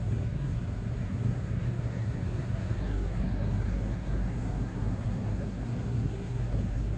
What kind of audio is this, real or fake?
fake